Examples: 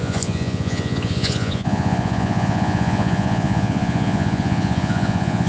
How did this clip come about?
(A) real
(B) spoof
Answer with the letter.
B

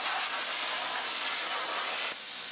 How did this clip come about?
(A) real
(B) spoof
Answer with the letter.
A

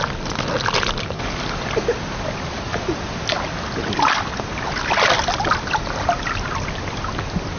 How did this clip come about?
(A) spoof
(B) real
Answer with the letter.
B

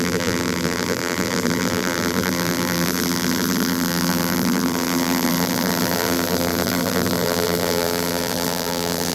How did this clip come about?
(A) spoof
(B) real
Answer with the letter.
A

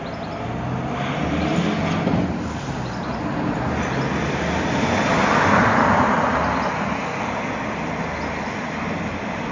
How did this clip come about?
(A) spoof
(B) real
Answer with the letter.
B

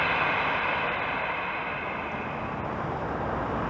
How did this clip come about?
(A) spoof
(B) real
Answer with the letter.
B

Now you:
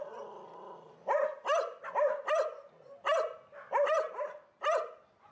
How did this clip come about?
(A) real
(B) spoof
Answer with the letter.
A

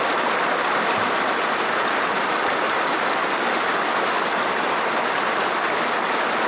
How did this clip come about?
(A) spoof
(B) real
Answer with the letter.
B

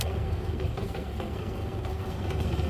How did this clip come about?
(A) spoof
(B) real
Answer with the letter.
A